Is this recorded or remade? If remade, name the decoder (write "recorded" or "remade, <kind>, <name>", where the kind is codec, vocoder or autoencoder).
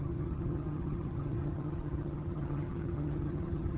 remade, vocoder, HiFi-GAN